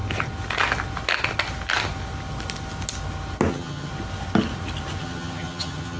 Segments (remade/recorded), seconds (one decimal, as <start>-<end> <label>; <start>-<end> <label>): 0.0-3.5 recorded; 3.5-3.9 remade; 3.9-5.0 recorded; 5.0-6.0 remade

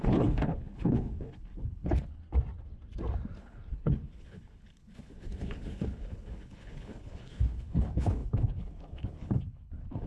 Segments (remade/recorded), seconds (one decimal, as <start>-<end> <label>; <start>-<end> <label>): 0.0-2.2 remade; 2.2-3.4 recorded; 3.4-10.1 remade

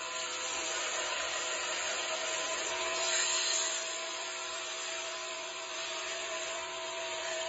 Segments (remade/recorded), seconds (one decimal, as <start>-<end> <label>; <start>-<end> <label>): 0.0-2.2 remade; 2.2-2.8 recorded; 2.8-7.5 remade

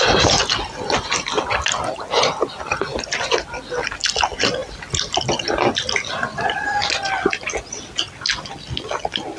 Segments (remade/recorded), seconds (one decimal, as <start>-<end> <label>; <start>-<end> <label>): 0.0-9.4 recorded

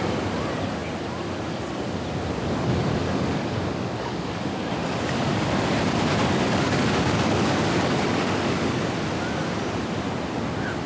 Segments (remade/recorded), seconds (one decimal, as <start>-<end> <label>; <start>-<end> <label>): 0.0-3.0 recorded; 3.0-4.7 remade; 4.7-6.2 recorded; 6.2-8.8 remade; 8.8-10.9 recorded